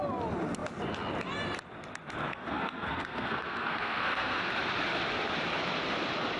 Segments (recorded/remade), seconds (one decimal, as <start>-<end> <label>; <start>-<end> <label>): 0.0-2.3 recorded; 2.3-4.5 remade; 4.5-6.4 recorded